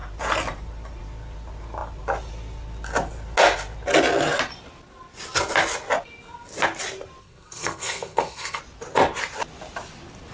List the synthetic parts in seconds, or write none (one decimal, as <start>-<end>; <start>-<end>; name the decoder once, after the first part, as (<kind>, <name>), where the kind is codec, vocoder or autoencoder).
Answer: 7.2-8.6 (codec, SNAC)